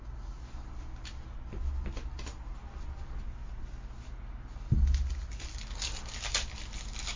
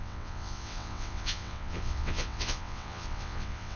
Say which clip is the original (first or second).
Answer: first